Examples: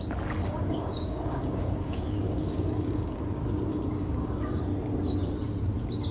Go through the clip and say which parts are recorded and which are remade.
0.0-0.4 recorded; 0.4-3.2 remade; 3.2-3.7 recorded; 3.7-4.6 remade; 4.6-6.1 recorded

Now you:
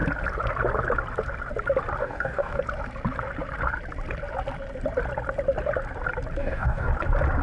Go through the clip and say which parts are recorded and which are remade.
0.0-2.0 recorded; 2.0-2.6 remade; 2.6-6.4 recorded; 6.4-6.9 remade; 6.9-7.4 recorded

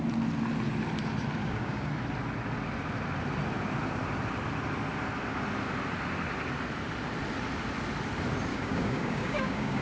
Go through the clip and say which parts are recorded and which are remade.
0.0-1.4 recorded; 1.4-1.9 remade; 1.9-8.5 recorded; 8.5-9.8 remade

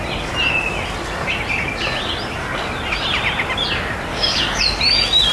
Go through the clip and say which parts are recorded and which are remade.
0.0-4.1 recorded; 4.1-4.6 remade; 4.6-5.3 recorded